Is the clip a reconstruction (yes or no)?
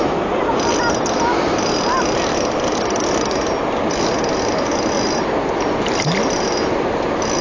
no